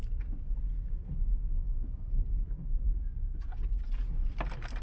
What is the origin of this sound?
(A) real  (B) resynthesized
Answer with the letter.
A